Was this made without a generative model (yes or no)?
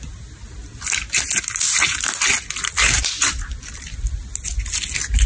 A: yes